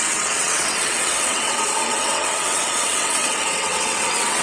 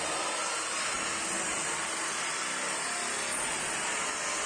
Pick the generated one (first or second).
first